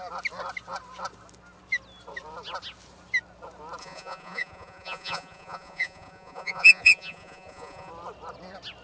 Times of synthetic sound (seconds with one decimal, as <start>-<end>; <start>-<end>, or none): 3.8-7.9